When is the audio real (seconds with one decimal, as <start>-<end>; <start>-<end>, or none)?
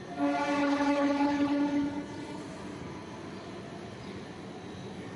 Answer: 0.0-0.6; 2.4-5.2